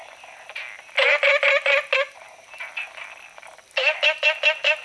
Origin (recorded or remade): recorded